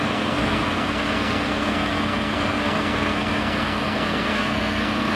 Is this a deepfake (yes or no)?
yes